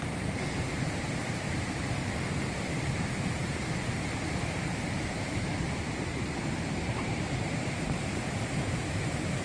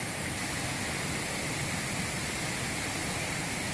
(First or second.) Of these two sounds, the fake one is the first